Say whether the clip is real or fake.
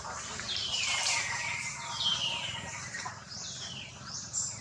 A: fake